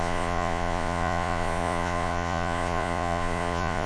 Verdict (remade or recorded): remade